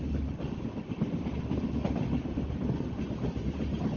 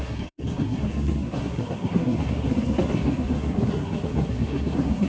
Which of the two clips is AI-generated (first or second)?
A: second